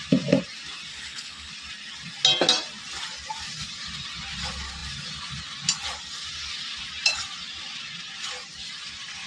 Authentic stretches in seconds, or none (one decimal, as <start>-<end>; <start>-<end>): 0.0-0.9; 1.5-9.3